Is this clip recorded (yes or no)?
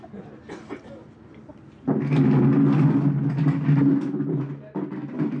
yes